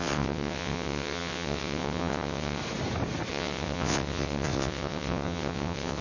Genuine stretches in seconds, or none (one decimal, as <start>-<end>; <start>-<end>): 2.6-3.3